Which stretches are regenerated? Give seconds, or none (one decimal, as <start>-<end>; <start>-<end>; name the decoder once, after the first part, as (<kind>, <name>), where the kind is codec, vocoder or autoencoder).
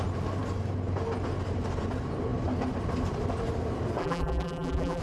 4.0-5.0 (vocoder, BigVGAN v2)